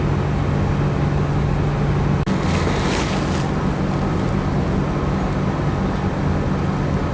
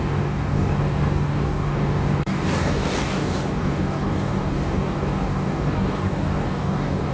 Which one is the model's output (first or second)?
second